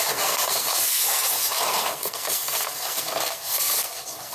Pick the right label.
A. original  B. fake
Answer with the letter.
B